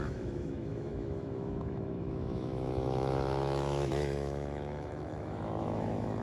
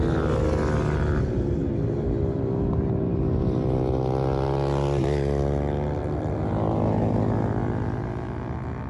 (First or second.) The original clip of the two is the second